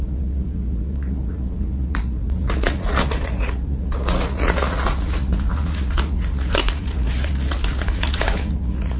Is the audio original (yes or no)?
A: no